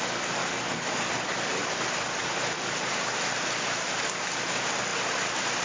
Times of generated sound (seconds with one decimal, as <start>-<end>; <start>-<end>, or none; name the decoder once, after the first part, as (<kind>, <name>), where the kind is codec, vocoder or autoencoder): 0.4-1.1 (codec, DAC)